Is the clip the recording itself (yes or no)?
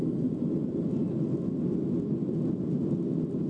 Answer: yes